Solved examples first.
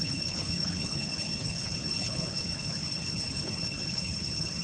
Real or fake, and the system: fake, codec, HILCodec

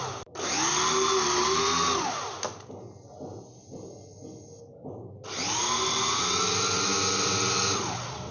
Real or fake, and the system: real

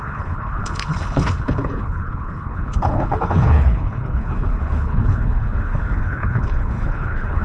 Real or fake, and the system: fake, codec, HILCodec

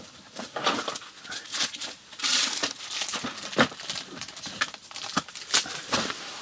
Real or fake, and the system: real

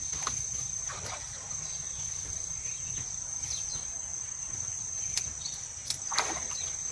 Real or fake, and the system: real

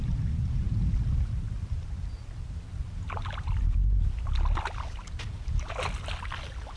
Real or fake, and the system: real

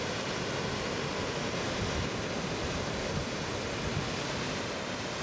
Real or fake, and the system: real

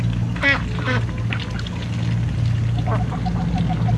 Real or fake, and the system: real